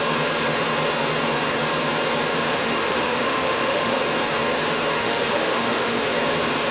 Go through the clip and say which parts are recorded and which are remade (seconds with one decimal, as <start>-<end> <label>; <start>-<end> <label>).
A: 0.0-2.5 recorded; 2.5-4.0 remade; 4.0-5.0 recorded; 5.0-6.0 remade; 6.0-6.7 recorded